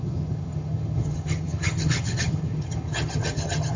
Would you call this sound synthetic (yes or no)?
yes